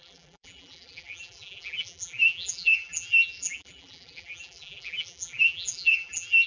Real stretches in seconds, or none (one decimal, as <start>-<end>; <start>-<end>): none